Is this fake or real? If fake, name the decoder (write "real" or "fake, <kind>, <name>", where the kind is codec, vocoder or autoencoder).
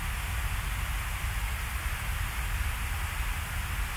real